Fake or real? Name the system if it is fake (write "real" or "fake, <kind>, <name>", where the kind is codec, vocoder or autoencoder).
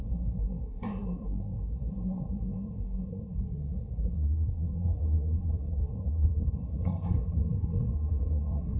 fake, codec, SNAC